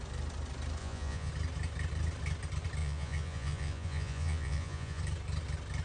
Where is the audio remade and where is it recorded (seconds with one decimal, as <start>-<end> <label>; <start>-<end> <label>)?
0.0-0.8 recorded; 0.8-1.3 remade; 1.3-2.8 recorded; 2.8-5.0 remade; 5.0-5.8 recorded